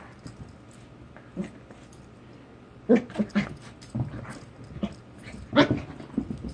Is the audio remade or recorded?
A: recorded